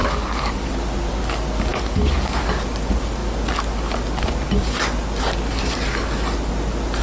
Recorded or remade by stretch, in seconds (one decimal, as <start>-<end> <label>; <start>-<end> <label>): 0.0-0.7 remade; 0.7-1.7 recorded; 1.7-2.4 remade; 2.4-7.0 recorded